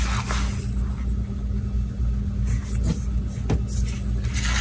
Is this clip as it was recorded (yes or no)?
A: yes